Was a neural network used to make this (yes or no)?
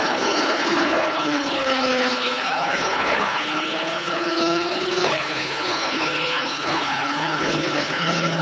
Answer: yes